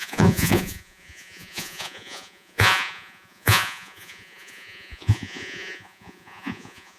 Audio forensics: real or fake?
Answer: fake